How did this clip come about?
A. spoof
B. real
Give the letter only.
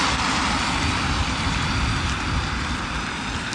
B